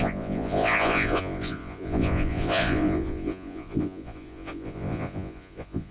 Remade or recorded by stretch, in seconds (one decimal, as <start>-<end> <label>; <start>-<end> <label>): 0.0-5.9 remade